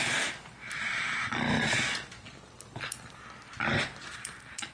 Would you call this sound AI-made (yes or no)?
no